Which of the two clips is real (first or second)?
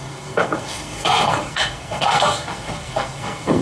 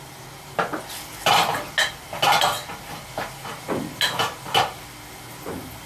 second